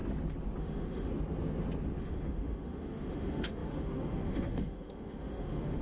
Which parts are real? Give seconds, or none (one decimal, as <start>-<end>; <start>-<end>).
0.0-0.6; 1.1-2.0